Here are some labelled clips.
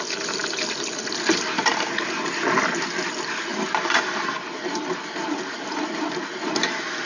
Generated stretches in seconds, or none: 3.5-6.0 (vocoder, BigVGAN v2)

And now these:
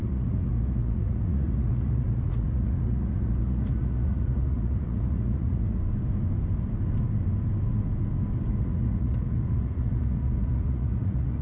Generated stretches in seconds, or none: 0.0-5.8 (vocoder, Vocos); 8.6-11.4

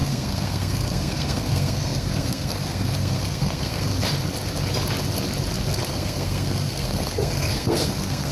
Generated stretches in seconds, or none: 0.0-3.9 (codec, SNAC); 5.9-8.3

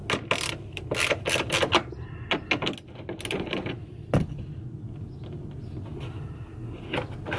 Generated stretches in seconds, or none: none

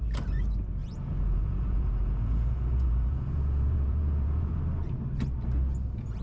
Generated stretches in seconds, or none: 0.8-4.5 (vocoder, Vocos)

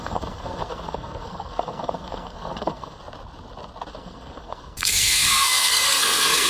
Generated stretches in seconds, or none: 0.0-3.0 (codec, SNAC); 3.9-6.5